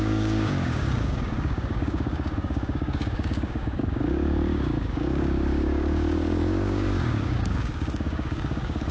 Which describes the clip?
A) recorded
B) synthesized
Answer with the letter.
B